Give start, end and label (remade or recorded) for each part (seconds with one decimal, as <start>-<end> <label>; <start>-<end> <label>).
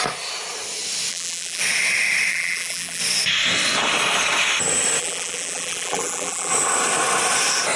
0.0-1.1 recorded; 1.1-1.6 remade; 1.6-2.3 recorded; 2.3-3.0 remade; 3.0-5.0 recorded; 5.0-6.5 remade; 6.5-7.8 recorded